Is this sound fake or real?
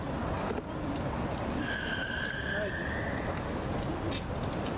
real